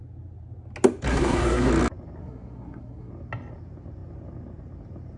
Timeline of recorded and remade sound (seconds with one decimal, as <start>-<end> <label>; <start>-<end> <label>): 0.0-1.1 recorded; 1.1-1.7 remade; 1.7-2.2 recorded; 2.2-3.1 remade; 3.1-5.2 recorded